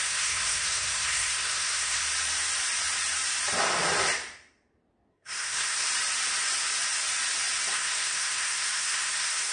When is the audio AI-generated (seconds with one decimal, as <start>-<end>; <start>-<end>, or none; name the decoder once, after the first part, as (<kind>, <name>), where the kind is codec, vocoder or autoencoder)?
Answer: 0.0-2.0 (codec, SNAC); 5.1-5.9; 7.7-9.5